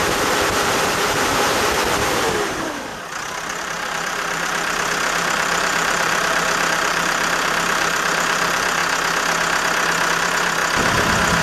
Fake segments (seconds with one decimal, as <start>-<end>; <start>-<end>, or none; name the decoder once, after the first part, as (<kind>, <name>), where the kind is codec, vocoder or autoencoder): 0.0-2.9 (vocoder, BigVGAN v2); 3.6-8.8; 10.1-10.6